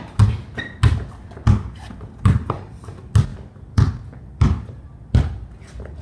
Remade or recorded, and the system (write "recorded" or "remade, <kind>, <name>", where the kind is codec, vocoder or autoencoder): recorded